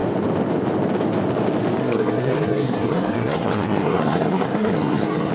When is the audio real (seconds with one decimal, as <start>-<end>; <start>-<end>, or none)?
0.0-1.8